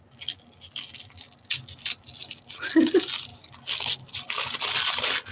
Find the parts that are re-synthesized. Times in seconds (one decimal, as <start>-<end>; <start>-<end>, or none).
none